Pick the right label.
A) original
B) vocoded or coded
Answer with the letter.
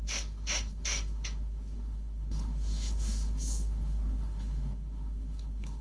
B